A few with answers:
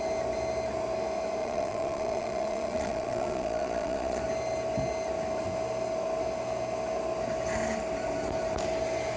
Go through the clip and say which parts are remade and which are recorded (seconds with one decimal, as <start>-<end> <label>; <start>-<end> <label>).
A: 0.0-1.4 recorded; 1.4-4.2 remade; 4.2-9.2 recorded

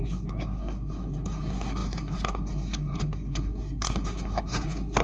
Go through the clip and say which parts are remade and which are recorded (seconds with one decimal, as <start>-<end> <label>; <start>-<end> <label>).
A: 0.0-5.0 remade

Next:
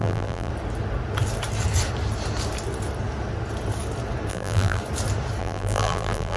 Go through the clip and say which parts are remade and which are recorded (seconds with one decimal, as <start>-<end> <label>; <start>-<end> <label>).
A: 0.0-0.5 remade; 0.5-4.3 recorded; 4.3-4.8 remade; 4.8-5.4 recorded; 5.4-6.4 remade

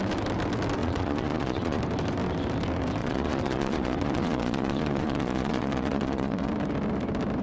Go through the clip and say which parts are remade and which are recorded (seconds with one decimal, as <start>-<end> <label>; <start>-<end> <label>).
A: 0.0-0.8 recorded; 0.8-1.8 remade; 1.8-3.0 recorded; 3.0-6.5 remade; 6.5-7.4 recorded